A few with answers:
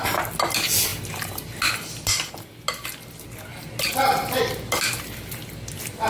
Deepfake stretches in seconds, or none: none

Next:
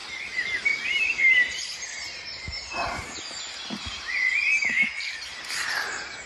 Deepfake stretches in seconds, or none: none

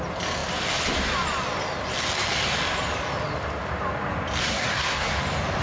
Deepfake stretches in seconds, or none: 4.4-5.1 (codec, SNAC)

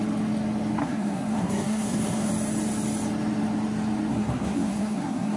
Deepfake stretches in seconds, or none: 0.8-2.3 (codec, SNAC); 4.1-5.4

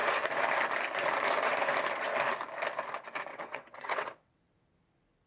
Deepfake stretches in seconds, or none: 3.3-4.3 (vocoder, WaveNeXt)

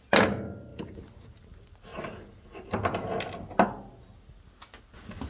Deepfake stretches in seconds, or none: none

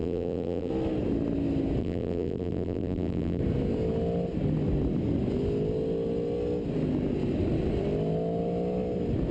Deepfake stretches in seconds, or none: 0.0-0.7 (vocoder, BigVGAN v2); 1.8-3.4